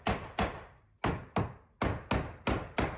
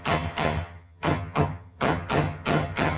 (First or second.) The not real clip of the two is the second